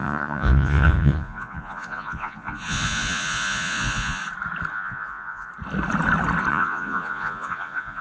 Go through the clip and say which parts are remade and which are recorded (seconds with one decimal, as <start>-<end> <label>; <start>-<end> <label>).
0.0-4.2 remade; 4.2-4.7 recorded; 4.7-5.5 remade; 5.5-6.5 recorded; 6.5-8.0 remade